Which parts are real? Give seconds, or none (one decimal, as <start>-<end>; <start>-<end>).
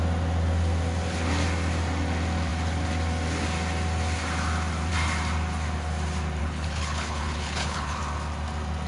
0.0-6.4; 8.0-8.9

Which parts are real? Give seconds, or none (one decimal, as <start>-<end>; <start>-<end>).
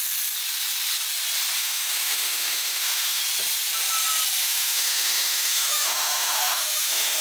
0.0-1.6; 3.2-4.4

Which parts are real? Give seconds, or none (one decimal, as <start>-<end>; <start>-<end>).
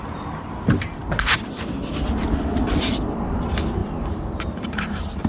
0.0-3.8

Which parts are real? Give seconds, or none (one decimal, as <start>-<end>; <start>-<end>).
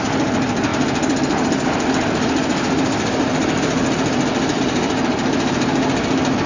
0.0-6.5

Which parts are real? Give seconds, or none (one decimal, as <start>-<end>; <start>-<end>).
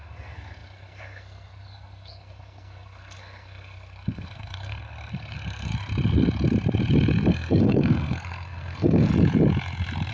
5.7-7.3; 9.1-10.1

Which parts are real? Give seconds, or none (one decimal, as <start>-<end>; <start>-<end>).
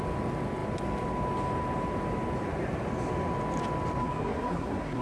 0.0-4.0